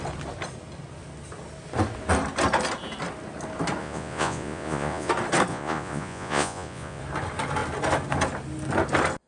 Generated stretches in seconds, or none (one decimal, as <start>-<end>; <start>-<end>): 3.8-5.1; 5.5-7.0